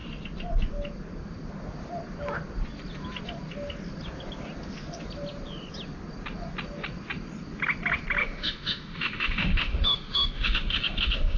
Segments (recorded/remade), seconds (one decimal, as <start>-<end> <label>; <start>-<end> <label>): 0.0-8.2 recorded; 8.2-11.4 remade